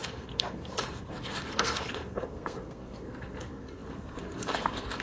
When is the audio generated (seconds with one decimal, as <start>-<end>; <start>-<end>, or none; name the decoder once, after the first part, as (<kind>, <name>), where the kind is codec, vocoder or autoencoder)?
0.0-5.0 (codec, SNAC)